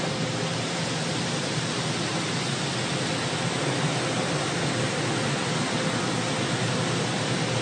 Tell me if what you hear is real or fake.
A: real